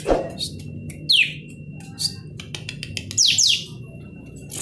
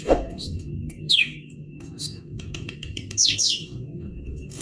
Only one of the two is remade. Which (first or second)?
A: second